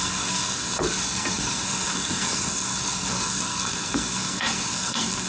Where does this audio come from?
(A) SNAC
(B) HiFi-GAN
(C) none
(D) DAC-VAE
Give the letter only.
A